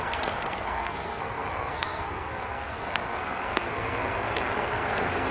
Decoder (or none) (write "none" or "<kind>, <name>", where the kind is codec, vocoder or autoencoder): codec, SNAC